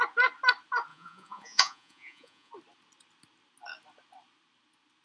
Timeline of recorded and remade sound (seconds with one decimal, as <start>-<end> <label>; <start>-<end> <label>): 0.0-0.9 recorded; 0.9-2.5 remade; 2.5-5.0 recorded